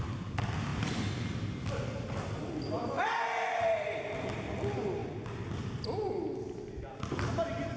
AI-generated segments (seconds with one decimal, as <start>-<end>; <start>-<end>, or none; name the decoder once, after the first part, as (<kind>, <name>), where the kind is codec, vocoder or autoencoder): none